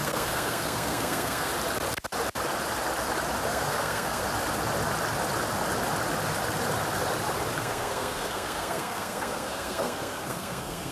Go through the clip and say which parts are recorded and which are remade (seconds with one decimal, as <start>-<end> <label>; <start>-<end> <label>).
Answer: 0.0-1.5 remade; 1.5-3.5 recorded; 3.5-4.2 remade; 4.2-7.6 recorded; 7.6-10.9 remade

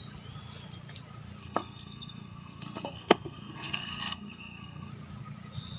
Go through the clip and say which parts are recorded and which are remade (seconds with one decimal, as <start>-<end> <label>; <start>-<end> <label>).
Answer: 0.0-1.4 recorded; 1.4-4.9 remade; 4.9-5.8 recorded